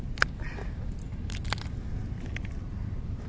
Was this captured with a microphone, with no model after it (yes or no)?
yes